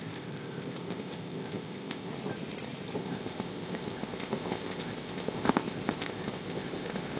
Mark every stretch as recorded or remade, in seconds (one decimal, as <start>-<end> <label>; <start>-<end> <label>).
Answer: 0.0-2.1 remade; 2.1-3.0 recorded; 3.0-7.2 remade

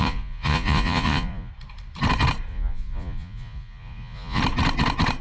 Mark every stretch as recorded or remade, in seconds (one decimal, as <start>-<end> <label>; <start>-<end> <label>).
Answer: 0.0-1.5 remade; 1.5-2.5 recorded; 2.5-4.4 remade; 4.4-5.2 recorded

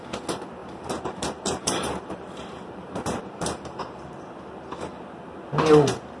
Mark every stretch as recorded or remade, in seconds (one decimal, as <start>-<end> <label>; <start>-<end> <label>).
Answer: 0.0-0.6 recorded; 0.6-3.8 remade; 3.8-6.2 recorded

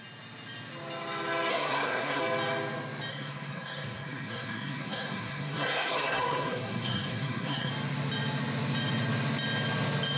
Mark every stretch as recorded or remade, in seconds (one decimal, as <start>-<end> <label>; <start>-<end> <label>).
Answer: 0.0-1.5 recorded; 1.5-2.2 remade; 2.2-3.1 recorded; 3.1-7.7 remade; 7.7-10.2 recorded